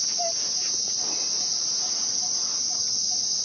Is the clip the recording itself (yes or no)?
yes